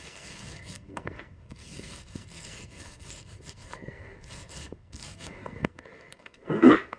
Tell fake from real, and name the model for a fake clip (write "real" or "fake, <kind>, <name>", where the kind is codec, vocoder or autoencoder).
fake, codec, SNAC